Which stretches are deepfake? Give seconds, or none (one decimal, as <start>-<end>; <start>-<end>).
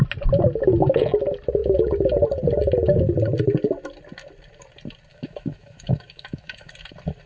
5.1-6.7